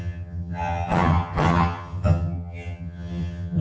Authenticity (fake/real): fake